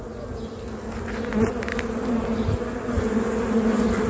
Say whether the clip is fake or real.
real